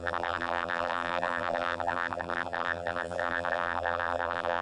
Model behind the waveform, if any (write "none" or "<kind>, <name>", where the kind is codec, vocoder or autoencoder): vocoder, BigVGAN v2